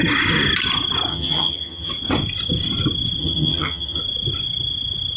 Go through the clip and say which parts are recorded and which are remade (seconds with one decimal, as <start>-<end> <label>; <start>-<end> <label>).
0.0-1.1 recorded; 1.1-1.9 remade; 1.9-3.2 recorded; 3.2-4.0 remade; 4.0-5.2 recorded